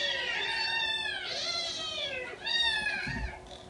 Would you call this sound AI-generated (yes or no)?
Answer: no